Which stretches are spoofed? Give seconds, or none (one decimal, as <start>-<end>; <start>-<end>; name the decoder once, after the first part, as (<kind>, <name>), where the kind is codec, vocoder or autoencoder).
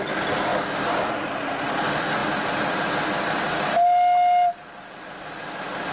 none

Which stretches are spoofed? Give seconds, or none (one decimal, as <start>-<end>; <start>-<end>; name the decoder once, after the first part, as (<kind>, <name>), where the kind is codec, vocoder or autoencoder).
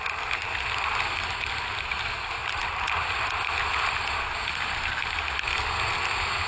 none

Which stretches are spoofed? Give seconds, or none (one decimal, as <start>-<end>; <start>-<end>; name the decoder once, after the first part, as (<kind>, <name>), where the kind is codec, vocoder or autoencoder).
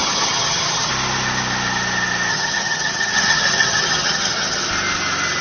0.0-0.9 (vocoder, HiFi-GAN); 2.3-4.7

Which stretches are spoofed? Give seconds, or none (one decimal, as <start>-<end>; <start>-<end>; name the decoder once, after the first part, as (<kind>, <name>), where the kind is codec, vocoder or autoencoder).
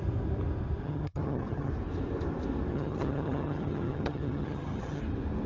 0.8-1.7 (vocoder, HiFi-GAN); 2.7-5.0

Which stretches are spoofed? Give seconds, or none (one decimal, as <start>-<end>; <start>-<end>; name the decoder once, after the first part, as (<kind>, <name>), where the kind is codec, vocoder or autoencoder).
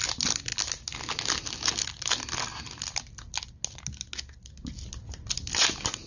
none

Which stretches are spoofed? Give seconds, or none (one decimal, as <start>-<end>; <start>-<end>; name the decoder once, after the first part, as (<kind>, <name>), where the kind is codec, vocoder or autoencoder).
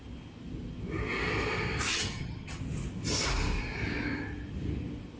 1.9-2.6 (vocoder, HiFi-GAN)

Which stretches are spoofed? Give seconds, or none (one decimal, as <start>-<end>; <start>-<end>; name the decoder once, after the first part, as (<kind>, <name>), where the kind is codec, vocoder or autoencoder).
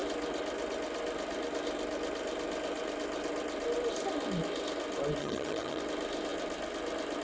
5.2-5.8 (vocoder, HiFi-GAN)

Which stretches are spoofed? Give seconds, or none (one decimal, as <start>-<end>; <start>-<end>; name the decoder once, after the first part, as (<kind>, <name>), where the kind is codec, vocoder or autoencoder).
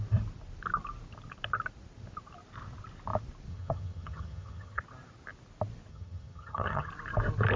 3.5-4.8 (vocoder, HiFi-GAN); 5.9-6.9